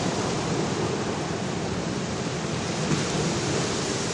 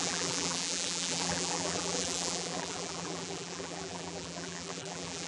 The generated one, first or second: second